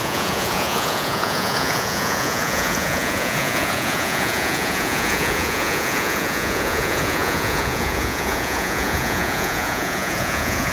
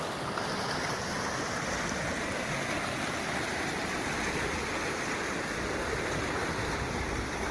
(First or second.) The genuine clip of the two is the second